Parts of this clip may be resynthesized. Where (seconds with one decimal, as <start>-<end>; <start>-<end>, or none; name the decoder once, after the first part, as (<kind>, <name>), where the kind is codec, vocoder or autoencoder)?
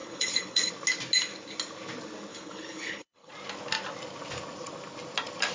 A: 0.0-0.7 (codec, HILCodec); 2.3-3.3